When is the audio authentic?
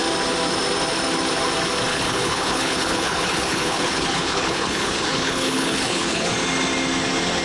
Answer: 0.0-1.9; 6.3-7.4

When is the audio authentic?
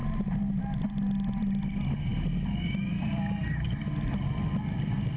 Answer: 0.6-5.2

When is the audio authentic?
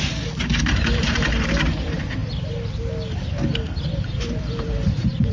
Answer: 2.2-4.0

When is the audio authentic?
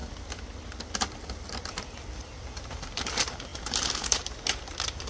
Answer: 0.0-3.1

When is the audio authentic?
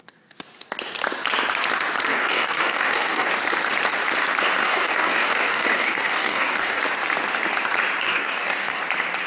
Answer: 0.0-2.1; 3.3-4.6; 6.8-8.0; 8.8-9.3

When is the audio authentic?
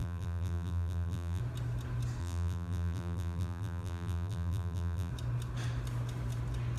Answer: 1.4-2.2; 5.1-6.8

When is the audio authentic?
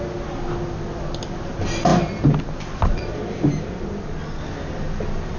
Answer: 0.0-5.4